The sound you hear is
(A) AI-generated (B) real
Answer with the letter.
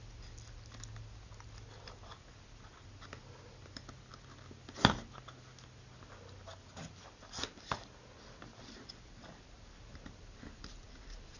B